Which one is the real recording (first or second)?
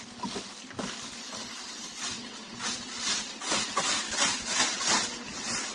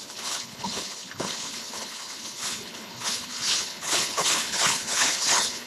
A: first